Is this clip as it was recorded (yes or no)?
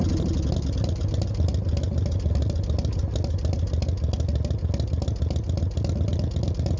yes